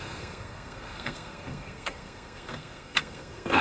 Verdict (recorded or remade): remade